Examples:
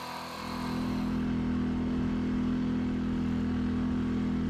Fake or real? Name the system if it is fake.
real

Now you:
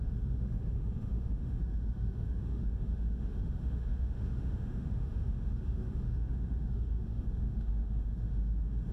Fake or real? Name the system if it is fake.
fake, autoencoder, DAC-VAE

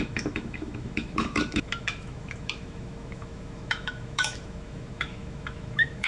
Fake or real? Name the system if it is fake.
fake, autoencoder, DAC-VAE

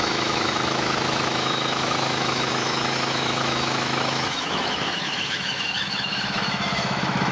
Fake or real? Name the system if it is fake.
fake, autoencoder, DAC-VAE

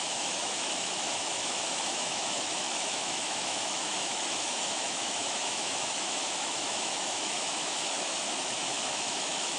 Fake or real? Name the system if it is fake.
fake, autoencoder, DAC-VAE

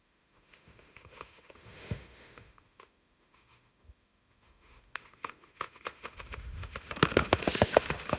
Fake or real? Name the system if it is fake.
fake, autoencoder, DAC-VAE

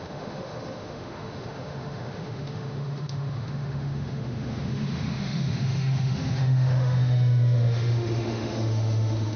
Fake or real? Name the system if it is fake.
fake, autoencoder, DAC-VAE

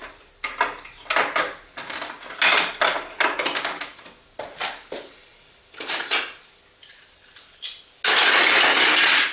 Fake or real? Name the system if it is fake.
real